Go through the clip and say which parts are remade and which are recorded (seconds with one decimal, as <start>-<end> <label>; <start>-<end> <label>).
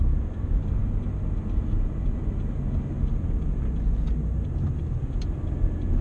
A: 0.0-6.0 recorded